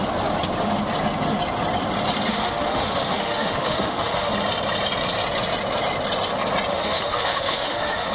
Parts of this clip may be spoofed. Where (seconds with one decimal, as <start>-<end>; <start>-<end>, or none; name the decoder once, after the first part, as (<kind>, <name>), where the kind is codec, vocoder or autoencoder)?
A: 2.3-4.3 (autoencoder, DAC-VAE); 6.7-8.1